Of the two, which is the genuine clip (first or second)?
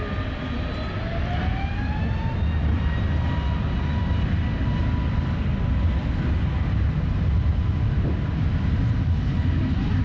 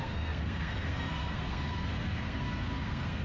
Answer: first